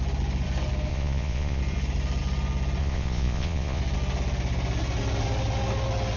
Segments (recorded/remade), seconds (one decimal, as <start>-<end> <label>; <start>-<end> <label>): 0.0-0.9 recorded; 0.9-1.6 remade; 1.6-2.8 recorded; 2.8-3.8 remade; 3.8-6.2 recorded